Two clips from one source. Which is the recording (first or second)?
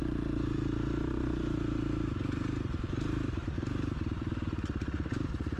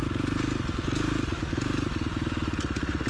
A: second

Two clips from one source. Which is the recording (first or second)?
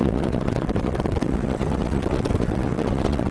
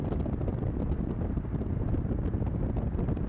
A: second